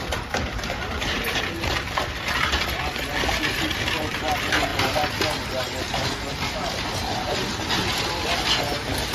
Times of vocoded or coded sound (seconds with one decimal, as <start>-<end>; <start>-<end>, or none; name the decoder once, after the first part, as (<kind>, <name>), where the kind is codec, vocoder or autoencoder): 0.0-2.6 (vocoder, BigVGAN v2)